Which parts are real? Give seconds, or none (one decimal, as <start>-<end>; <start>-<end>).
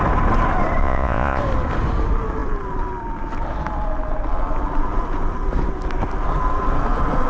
0.0-0.8; 1.4-7.3